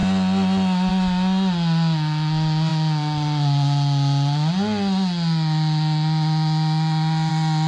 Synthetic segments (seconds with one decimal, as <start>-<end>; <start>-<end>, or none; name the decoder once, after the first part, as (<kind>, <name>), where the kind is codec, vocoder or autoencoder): none